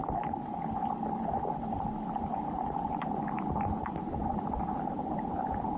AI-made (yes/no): no